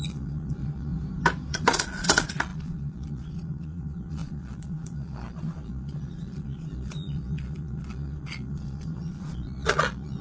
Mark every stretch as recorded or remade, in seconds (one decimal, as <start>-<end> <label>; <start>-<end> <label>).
0.0-0.9 remade; 0.9-1.5 recorded; 1.5-10.2 remade